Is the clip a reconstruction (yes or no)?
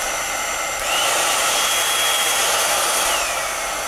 yes